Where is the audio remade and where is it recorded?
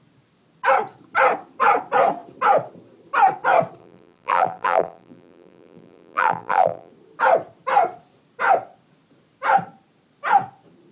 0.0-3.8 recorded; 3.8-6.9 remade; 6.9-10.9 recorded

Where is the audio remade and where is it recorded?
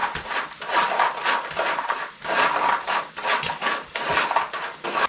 0.0-5.1 recorded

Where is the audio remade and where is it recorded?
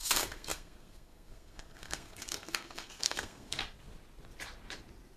0.0-3.6 remade; 3.6-5.2 recorded